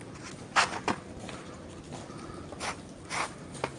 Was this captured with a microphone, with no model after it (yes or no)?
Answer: yes